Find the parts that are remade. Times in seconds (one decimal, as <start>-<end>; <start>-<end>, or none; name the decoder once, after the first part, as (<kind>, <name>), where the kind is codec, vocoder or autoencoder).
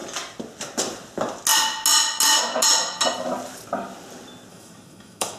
4.5-5.4 (autoencoder, DAC-VAE)